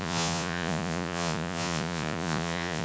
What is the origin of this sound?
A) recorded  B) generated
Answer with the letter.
B